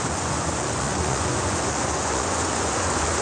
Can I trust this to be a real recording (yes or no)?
no